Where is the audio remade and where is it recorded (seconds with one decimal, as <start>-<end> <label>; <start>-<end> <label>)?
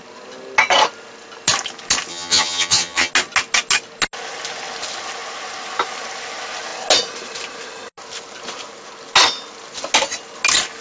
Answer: 0.0-2.1 recorded; 2.1-3.1 remade; 3.1-10.8 recorded